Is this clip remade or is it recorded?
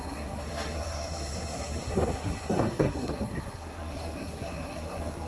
remade